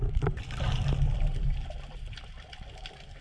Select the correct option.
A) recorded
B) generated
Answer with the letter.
B